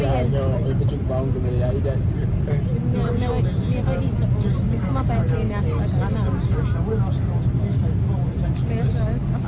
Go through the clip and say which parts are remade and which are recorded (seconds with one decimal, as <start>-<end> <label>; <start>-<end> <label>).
0.0-9.5 recorded